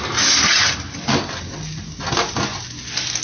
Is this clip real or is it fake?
real